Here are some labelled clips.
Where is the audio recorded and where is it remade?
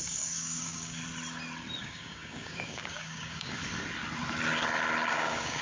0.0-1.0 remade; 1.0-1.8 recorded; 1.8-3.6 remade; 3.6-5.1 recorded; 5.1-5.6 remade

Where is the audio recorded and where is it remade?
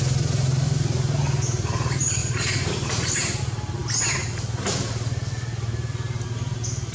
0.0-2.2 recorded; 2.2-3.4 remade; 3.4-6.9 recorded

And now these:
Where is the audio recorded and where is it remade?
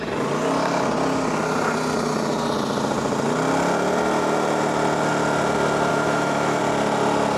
0.0-5.9 recorded; 5.9-6.6 remade; 6.6-7.4 recorded